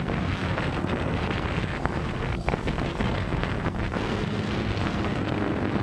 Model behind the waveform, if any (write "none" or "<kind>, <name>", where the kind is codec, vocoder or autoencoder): codec, SNAC